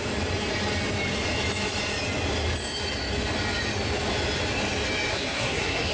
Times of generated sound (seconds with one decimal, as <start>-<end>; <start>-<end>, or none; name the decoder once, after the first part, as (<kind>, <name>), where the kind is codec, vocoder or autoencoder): 5.1-5.9 (codec, SNAC)